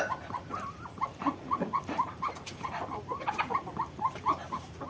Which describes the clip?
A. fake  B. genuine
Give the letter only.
A